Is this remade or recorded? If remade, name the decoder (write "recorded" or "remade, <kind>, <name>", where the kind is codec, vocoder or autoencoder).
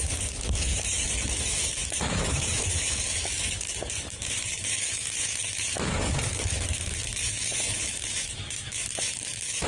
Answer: remade, autoencoder, DAC-VAE